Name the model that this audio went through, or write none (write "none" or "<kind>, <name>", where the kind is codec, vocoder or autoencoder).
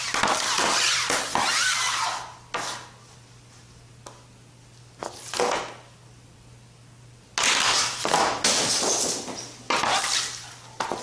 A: none